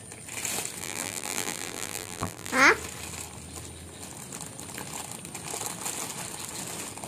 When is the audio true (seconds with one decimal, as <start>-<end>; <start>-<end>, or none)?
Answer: 0.0-0.8; 2.5-7.1